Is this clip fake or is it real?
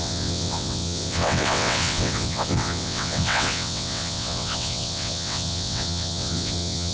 fake